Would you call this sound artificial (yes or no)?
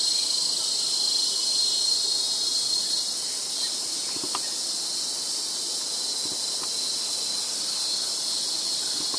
no